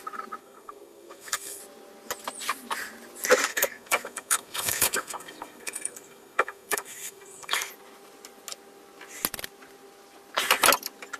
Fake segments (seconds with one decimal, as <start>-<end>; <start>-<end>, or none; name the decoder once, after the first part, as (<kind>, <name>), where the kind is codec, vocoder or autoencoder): 0.4-1.6 (codec, SNAC); 3.5-7.7